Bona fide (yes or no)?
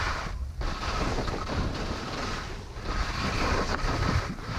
yes